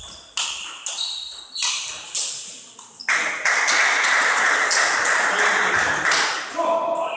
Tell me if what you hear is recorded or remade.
recorded